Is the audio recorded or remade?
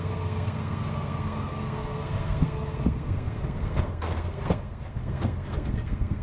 remade